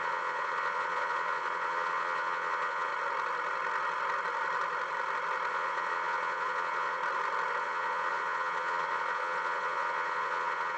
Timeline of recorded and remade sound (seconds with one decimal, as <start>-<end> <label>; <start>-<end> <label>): 0.0-2.9 remade; 2.9-5.5 recorded; 5.5-7.0 remade; 7.0-7.6 recorded; 7.6-10.8 remade

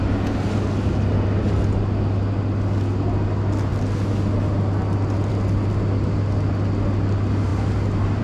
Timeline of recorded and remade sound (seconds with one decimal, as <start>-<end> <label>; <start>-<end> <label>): 0.0-8.2 recorded

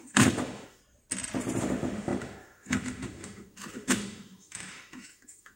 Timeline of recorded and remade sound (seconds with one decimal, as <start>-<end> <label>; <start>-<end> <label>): 0.0-0.8 remade; 0.8-1.6 recorded; 1.6-5.6 remade

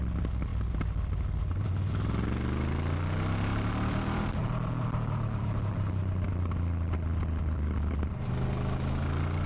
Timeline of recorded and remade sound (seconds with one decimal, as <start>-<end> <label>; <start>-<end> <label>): 0.0-3.5 recorded; 3.5-6.3 remade; 6.3-9.5 recorded